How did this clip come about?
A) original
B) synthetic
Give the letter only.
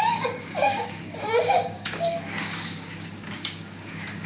B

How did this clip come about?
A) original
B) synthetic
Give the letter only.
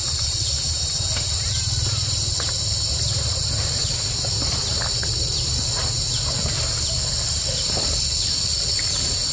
A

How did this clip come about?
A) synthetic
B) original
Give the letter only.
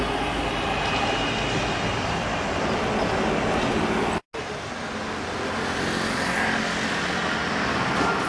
B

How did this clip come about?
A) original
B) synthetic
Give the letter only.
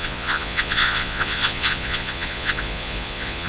B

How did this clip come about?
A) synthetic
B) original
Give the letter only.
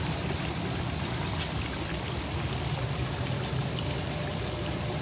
B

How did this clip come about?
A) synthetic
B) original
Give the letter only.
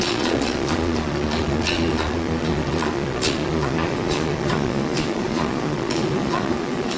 A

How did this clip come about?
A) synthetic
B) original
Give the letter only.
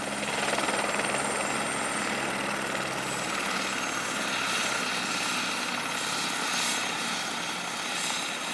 B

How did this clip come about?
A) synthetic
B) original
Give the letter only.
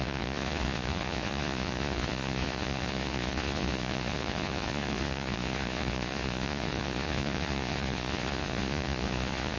A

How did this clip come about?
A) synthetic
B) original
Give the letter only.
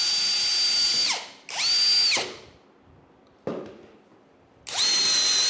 B